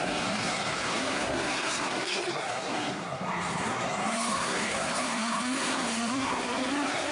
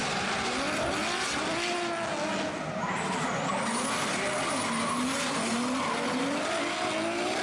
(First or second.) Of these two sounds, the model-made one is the first